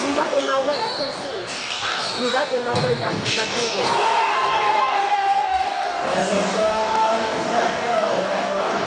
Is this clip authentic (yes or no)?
no